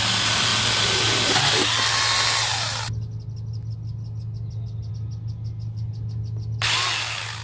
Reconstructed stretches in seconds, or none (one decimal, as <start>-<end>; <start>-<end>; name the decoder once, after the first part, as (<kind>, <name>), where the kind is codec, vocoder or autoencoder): none